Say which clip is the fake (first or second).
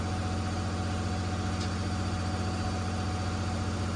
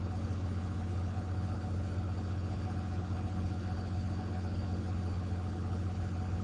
second